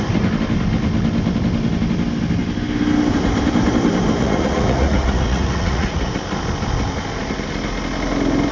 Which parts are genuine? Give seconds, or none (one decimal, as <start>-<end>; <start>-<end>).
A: 0.0-4.2; 6.1-8.5